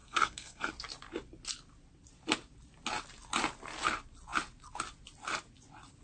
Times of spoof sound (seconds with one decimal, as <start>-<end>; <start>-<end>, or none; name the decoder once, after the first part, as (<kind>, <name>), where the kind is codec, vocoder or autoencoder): 0.0-0.7 (codec, SNAC)